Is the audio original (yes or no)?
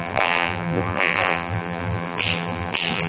no